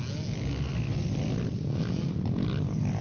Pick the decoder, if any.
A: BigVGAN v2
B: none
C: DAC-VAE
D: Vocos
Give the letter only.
B